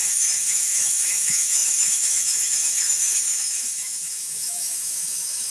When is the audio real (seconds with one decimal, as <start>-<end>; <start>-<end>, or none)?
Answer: none